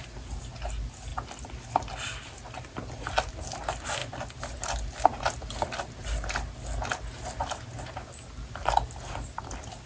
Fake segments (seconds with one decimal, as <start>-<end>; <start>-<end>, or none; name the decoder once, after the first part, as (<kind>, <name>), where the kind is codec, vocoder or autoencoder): none